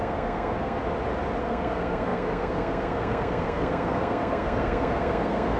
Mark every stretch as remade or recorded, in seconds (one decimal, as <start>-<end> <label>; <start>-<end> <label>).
0.0-0.8 remade; 0.8-1.4 recorded; 1.4-5.6 remade